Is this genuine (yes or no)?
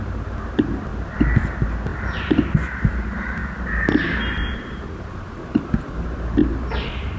yes